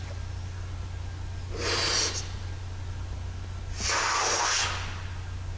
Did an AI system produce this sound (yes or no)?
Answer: no